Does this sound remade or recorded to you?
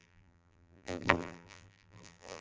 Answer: remade